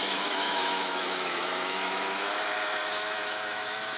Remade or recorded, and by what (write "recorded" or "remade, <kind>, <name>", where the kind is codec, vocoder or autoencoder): remade, autoencoder, DAC-VAE